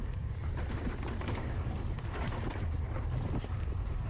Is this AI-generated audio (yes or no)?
yes